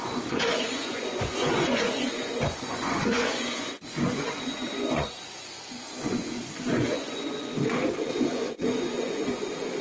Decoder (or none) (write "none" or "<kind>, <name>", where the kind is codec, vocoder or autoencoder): vocoder, Vocos